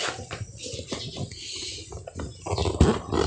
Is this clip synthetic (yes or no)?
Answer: no